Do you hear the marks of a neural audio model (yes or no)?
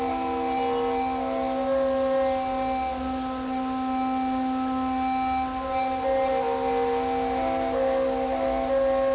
no